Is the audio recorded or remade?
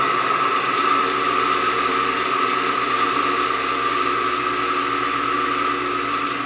recorded